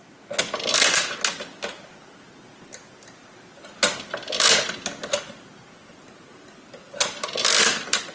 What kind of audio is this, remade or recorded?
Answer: recorded